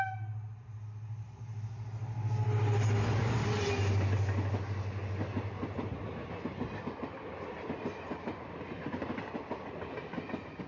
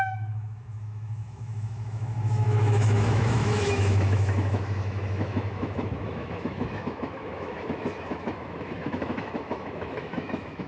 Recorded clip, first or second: first